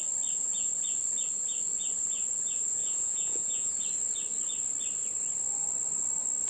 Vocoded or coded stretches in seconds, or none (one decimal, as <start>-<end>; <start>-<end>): 2.8-3.7